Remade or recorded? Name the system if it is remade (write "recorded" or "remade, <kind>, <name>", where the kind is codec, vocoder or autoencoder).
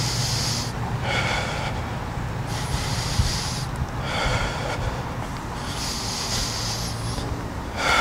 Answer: recorded